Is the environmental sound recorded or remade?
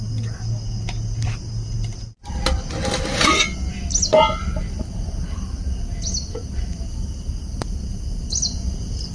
recorded